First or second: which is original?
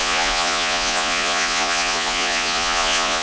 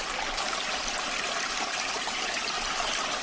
second